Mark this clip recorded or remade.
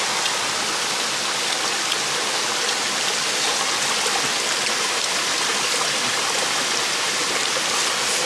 recorded